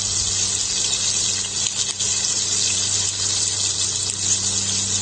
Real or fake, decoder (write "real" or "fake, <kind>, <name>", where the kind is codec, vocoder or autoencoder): real